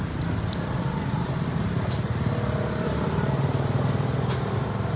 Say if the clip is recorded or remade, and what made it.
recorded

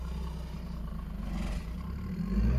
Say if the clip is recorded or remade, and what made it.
recorded